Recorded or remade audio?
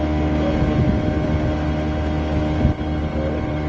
recorded